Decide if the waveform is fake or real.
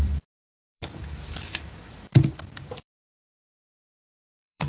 fake